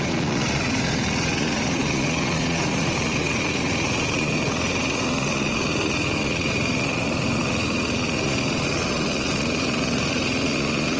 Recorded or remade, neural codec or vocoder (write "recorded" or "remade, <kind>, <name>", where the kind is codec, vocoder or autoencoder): remade, vocoder, Vocos